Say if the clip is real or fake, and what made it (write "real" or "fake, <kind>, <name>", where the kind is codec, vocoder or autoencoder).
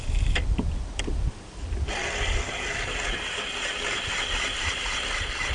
real